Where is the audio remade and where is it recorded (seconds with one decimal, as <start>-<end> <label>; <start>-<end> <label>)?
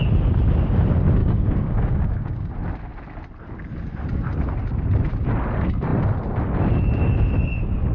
0.0-1.2 recorded; 1.2-2.5 remade; 2.5-7.9 recorded